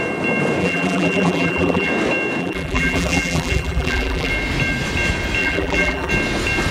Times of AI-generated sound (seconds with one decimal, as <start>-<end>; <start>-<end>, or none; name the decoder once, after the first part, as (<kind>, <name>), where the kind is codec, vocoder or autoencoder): 0.6-1.9 (vocoder, BigVGAN v2); 2.4-4.3; 5.4-6.1